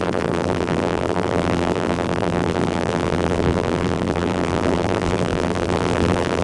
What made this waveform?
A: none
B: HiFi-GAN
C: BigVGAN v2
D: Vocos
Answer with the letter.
C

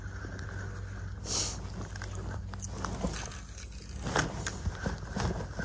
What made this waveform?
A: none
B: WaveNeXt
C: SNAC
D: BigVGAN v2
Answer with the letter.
A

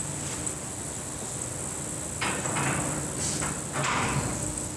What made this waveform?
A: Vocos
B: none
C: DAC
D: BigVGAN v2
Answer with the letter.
B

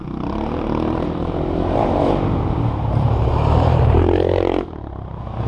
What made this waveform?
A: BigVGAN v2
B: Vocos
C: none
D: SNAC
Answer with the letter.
A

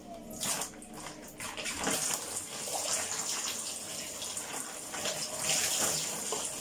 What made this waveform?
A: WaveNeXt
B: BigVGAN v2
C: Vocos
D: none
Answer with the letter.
D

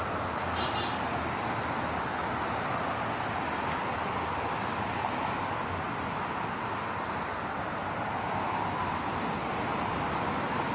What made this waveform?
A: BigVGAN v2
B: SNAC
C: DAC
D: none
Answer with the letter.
D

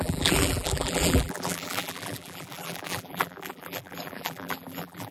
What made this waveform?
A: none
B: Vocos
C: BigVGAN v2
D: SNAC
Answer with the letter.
C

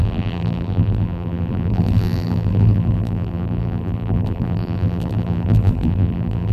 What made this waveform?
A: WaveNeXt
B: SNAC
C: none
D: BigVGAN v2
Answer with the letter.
D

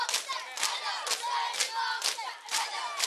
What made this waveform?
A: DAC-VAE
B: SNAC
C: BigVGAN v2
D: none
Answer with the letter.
D